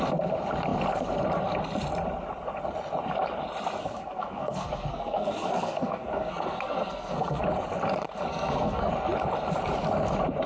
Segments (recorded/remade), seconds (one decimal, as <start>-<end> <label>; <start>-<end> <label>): 0.0-3.8 recorded; 3.8-7.4 remade; 7.4-8.3 recorded; 8.3-8.9 remade; 8.9-10.5 recorded

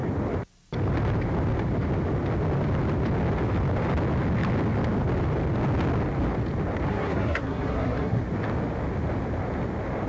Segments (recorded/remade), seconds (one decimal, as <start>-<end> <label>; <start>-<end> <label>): 0.0-6.9 recorded; 6.9-8.2 remade; 8.2-10.1 recorded

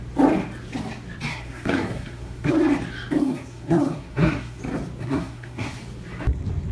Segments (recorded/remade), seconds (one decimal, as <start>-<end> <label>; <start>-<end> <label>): 0.0-1.3 recorded; 1.3-2.5 remade; 2.5-3.2 recorded; 3.2-4.6 remade; 4.6-5.0 recorded; 5.0-5.8 remade; 5.8-6.7 recorded

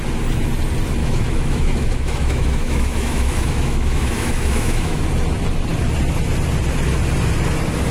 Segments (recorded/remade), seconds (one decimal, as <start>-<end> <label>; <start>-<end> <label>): 0.0-1.0 recorded; 1.0-5.0 remade; 5.0-7.9 recorded

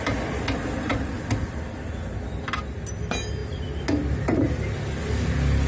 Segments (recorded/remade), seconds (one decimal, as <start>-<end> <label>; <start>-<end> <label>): 0.0-5.7 recorded

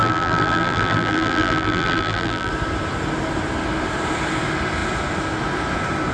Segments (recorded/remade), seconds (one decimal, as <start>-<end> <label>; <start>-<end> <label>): 0.0-2.5 remade; 2.5-6.1 recorded

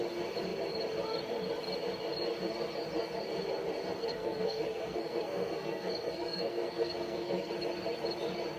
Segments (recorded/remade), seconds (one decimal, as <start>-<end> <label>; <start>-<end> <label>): 0.0-4.0 recorded; 4.0-7.5 remade; 7.5-8.6 recorded